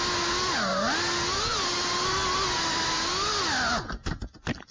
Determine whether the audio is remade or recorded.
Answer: recorded